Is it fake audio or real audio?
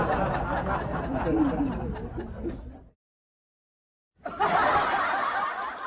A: real